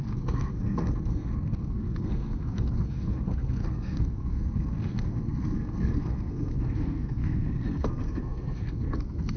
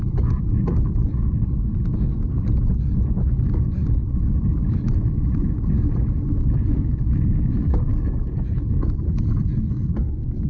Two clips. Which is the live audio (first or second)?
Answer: second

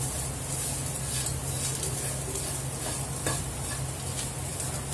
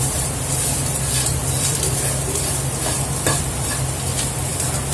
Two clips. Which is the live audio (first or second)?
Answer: first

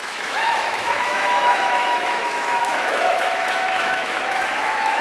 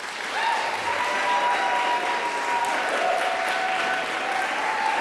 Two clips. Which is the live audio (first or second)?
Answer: second